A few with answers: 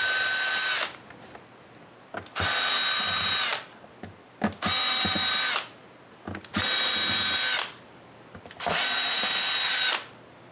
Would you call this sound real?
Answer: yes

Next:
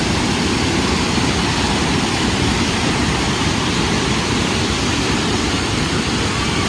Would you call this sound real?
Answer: yes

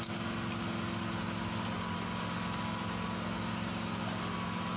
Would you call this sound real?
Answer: yes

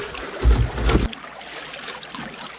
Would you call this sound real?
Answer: yes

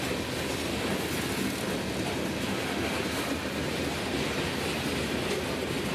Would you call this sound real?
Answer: yes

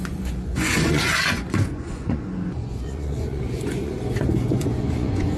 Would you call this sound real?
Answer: no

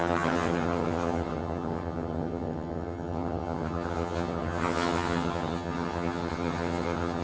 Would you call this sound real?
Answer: no